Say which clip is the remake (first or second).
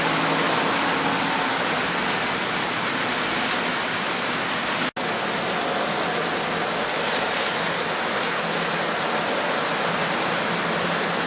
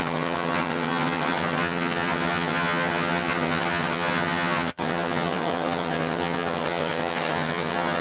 second